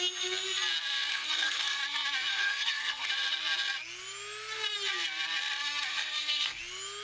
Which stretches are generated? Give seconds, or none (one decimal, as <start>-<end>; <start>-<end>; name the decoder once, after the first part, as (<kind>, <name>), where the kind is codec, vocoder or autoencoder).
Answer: 1.1-1.8 (codec, SNAC); 2.3-3.1; 5.9-6.6